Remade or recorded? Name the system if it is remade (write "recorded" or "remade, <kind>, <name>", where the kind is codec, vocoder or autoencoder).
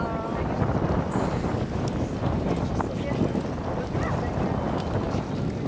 recorded